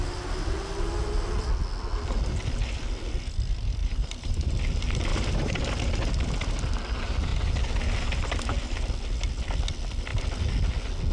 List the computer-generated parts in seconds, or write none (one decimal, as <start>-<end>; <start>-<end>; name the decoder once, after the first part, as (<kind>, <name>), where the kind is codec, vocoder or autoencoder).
3.8-4.5 (vocoder, BigVGAN v2); 5.1-5.7